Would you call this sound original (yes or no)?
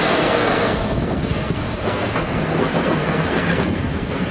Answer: no